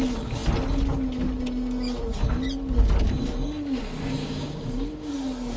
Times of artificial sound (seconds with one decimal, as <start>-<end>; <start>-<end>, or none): 4.2-5.1